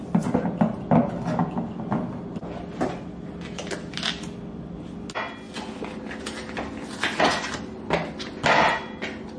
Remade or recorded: recorded